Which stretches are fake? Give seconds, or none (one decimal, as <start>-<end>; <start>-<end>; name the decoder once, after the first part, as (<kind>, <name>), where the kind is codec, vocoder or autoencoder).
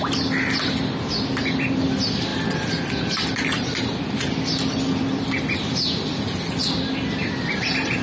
none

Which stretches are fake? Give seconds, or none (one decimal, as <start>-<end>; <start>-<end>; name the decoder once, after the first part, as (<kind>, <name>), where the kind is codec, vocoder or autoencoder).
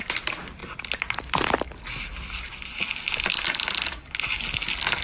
none